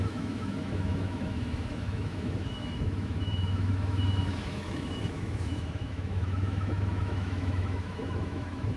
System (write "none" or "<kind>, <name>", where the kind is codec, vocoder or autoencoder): autoencoder, DAC-VAE